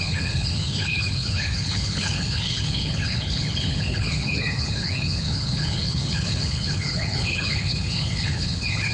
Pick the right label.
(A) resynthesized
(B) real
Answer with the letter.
A